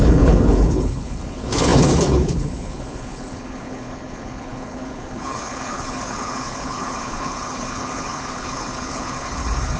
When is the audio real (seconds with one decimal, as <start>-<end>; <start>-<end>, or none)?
none